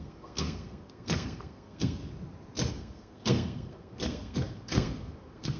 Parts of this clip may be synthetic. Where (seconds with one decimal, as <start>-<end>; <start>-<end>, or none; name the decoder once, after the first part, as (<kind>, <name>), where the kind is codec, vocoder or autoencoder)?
0.0-2.0 (codec, SNAC); 2.7-5.6